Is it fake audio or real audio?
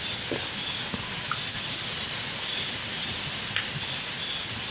real